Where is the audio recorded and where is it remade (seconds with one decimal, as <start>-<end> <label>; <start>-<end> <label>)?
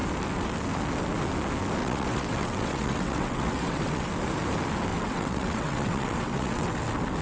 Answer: 0.0-1.8 recorded; 1.8-4.1 remade; 4.1-4.9 recorded; 4.9-6.8 remade; 6.8-7.2 recorded